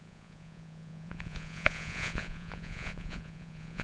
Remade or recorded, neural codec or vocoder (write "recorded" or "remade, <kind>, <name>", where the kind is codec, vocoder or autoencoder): remade, vocoder, Vocos